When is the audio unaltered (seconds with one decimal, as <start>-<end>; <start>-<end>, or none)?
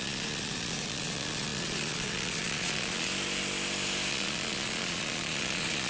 3.1-4.1